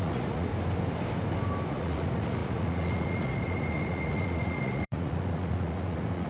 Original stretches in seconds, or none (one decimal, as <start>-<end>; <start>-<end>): 0.5-1.7